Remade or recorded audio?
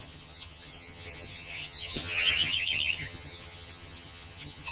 remade